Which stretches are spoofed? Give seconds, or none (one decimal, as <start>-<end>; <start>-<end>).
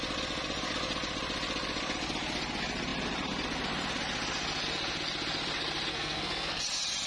5.9-6.6